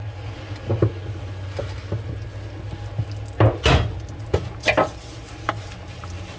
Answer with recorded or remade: recorded